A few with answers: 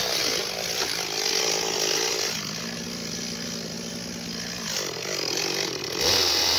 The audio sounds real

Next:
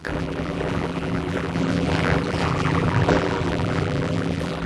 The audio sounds fake